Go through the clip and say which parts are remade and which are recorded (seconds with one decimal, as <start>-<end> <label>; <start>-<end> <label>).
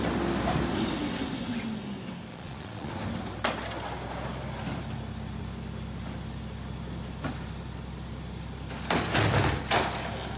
0.0-2.3 recorded; 2.3-2.9 remade; 2.9-10.4 recorded